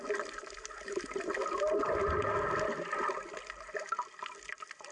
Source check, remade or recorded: recorded